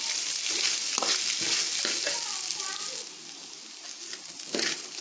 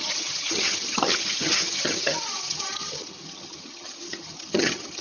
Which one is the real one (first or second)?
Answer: first